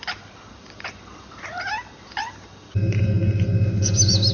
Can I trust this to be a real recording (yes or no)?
yes